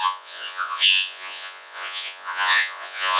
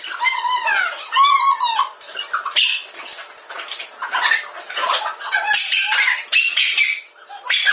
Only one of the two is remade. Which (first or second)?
first